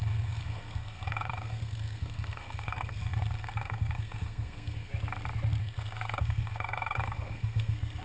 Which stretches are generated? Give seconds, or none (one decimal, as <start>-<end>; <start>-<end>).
0.0-4.9; 5.6-8.0